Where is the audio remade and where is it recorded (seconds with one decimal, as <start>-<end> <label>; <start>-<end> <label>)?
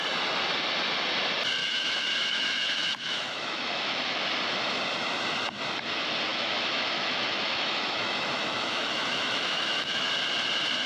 0.0-1.6 recorded; 1.6-4.2 remade; 4.2-6.3 recorded; 6.3-10.1 remade; 10.1-10.9 recorded